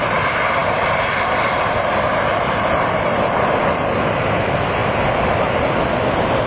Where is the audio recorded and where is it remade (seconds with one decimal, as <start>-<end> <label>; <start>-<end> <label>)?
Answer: 0.0-0.6 recorded; 0.6-4.2 remade; 4.2-4.8 recorded; 4.8-5.6 remade; 5.6-6.5 recorded